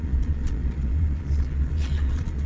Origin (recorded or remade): remade